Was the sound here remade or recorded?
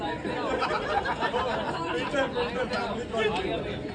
recorded